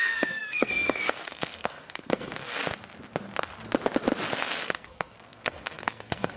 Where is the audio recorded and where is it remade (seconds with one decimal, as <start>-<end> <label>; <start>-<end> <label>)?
0.0-2.6 remade; 2.6-4.4 recorded; 4.4-6.4 remade

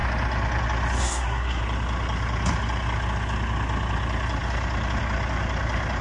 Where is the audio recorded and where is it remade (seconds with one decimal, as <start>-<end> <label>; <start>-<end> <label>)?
0.0-1.0 recorded; 1.0-1.6 remade; 1.6-6.0 recorded

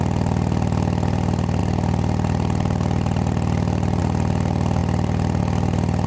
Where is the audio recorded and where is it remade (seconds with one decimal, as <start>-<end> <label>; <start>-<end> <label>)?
0.0-6.1 recorded

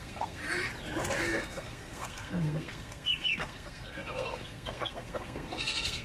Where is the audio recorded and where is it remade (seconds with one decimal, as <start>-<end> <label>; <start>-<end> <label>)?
0.0-0.4 remade; 0.4-1.2 recorded; 1.2-6.0 remade

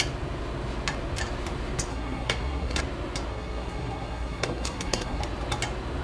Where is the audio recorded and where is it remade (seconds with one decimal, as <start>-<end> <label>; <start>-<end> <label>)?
0.0-1.9 recorded; 1.9-2.8 remade; 2.8-3.3 recorded; 3.3-5.2 remade; 5.2-6.0 recorded